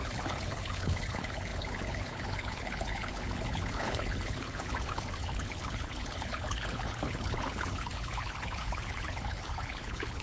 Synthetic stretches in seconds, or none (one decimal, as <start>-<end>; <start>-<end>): 0.0-10.2